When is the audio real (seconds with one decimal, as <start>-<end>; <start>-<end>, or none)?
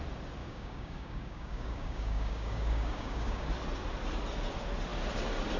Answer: 0.0-0.4; 3.5-5.6